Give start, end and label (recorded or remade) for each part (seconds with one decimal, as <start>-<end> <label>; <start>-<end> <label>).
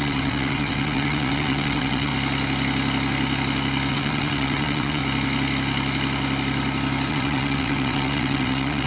0.0-2.1 remade; 2.1-3.9 recorded; 3.9-5.0 remade; 5.0-7.1 recorded; 7.1-8.9 remade